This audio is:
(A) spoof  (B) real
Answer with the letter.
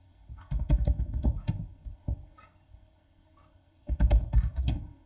A